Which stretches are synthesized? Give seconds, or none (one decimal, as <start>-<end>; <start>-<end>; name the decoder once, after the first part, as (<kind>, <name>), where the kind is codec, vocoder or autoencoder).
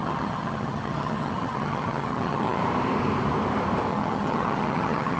0.0-2.6 (vocoder, HiFi-GAN); 3.9-5.2